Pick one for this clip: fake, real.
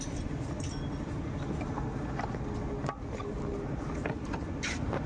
real